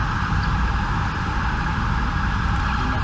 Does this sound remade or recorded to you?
recorded